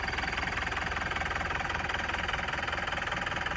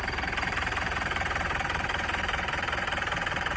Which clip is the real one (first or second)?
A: first